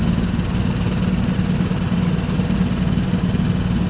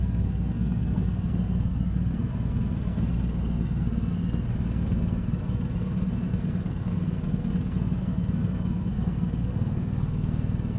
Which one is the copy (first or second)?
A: second